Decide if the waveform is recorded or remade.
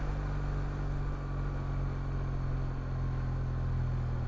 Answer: recorded